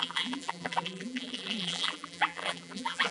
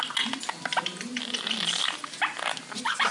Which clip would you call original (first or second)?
second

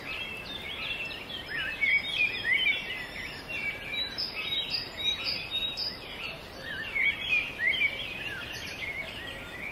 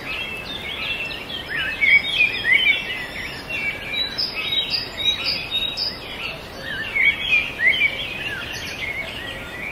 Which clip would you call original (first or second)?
second